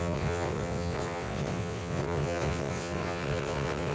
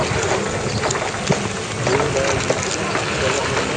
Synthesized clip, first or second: first